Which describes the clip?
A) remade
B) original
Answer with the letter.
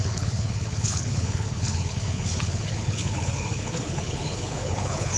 A